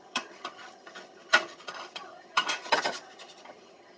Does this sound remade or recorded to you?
remade